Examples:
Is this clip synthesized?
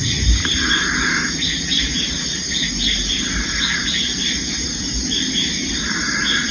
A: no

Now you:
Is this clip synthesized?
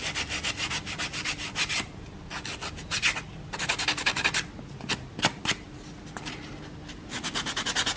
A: no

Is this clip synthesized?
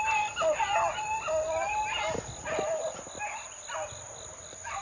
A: no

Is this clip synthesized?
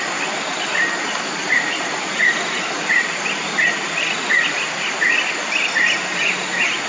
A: no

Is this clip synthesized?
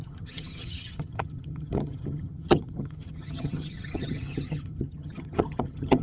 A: yes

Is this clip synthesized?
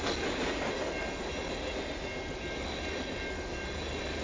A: no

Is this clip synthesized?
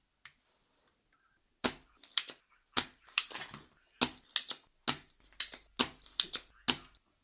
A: no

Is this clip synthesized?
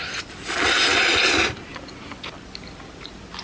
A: no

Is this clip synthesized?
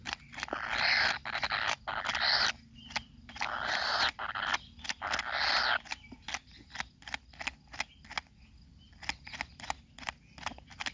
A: no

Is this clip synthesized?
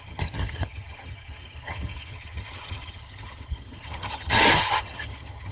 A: yes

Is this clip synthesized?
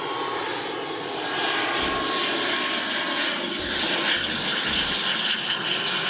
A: no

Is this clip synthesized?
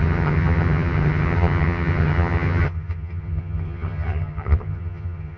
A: yes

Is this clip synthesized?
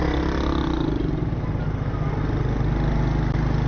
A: no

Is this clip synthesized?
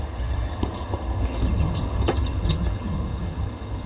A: yes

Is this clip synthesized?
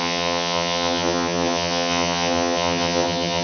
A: yes